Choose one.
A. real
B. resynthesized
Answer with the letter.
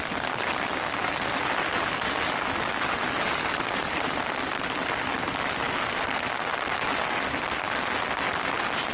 A